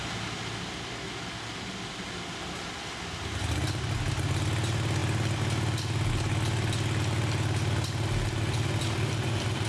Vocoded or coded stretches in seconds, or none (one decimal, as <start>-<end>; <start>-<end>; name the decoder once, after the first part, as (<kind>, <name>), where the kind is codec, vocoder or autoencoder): none